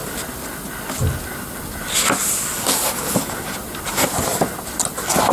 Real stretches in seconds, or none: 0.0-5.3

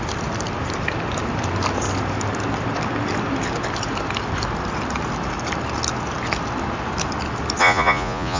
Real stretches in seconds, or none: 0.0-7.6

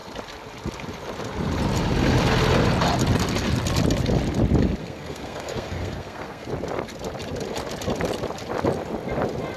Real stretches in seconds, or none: 0.0-4.8; 6.5-9.6